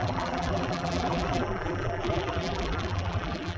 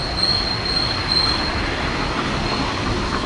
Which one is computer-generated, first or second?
first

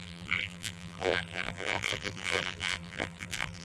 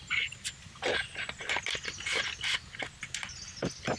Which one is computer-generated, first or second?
first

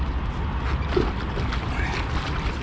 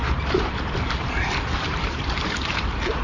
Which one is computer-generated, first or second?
second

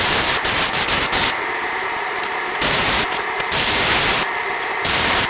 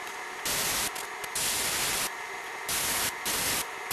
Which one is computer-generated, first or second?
first